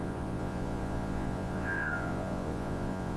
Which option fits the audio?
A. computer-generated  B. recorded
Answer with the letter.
A